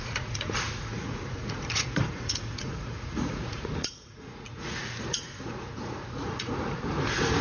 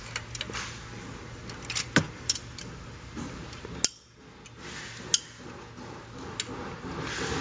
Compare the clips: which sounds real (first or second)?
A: second